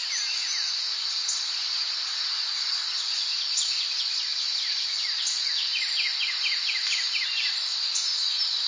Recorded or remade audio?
recorded